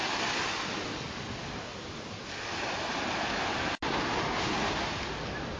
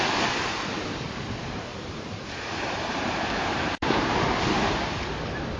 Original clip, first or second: first